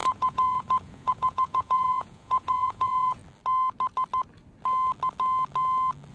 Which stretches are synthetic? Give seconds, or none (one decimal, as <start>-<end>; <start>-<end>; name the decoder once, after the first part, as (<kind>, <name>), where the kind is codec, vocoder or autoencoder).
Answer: 0.0-3.2 (vocoder, Vocos)